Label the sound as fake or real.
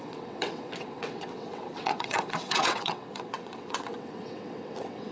fake